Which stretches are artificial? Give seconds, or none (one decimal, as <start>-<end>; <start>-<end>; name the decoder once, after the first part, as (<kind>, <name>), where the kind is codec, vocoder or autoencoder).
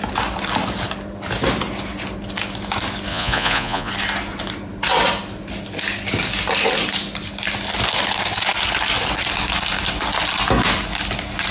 3.1-3.9 (vocoder, Vocos)